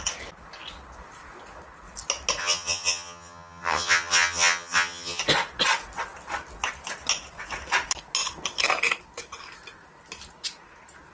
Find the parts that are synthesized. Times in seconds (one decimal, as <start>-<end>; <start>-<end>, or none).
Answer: 2.4-5.2